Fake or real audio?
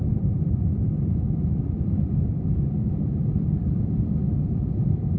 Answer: real